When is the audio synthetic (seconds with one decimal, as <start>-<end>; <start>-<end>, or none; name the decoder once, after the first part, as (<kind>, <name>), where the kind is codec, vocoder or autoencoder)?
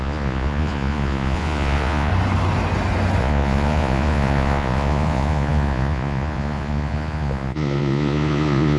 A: 0.0-2.1 (vocoder, Vocos); 3.2-8.8